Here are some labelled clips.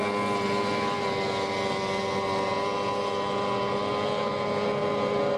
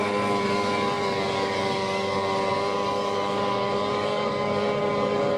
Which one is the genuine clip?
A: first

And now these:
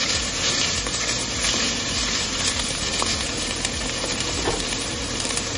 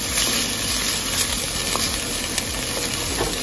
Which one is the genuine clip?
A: second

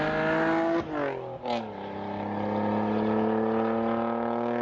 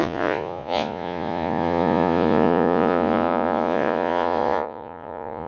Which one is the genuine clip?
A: first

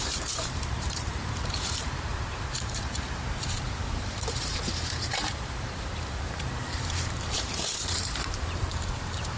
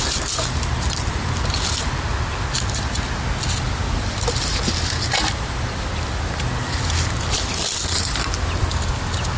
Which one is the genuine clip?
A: second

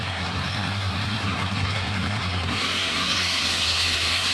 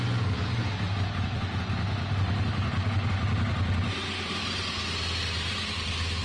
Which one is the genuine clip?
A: second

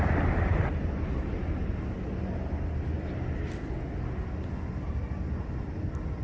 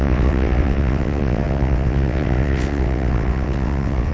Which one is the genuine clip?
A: first